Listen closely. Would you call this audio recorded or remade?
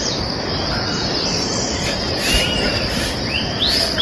recorded